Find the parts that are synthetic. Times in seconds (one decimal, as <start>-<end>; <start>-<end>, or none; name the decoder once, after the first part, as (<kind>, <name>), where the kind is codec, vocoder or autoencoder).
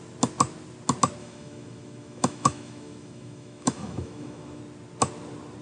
1.2-4.6 (autoencoder, DAC-VAE)